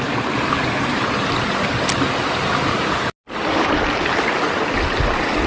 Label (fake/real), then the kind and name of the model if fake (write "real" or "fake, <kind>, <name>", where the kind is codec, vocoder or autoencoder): real